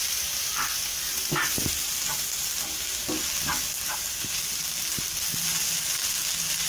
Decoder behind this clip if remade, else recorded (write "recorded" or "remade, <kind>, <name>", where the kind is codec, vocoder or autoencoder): remade, vocoder, BigVGAN v2